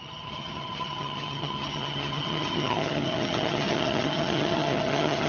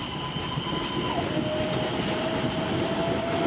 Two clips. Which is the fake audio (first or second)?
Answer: first